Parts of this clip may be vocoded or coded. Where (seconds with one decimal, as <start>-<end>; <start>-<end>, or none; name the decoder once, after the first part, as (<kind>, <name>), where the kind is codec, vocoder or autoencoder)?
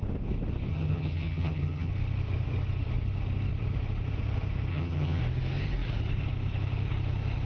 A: 0.7-1.9 (vocoder, HiFi-GAN); 4.7-5.2